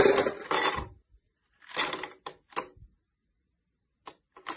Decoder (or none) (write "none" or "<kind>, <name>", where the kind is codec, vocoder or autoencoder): none